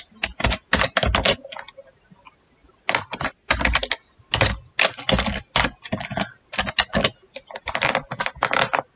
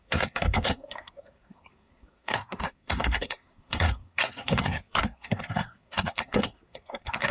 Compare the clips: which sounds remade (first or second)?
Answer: second